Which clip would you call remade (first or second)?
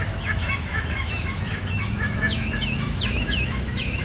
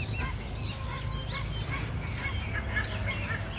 first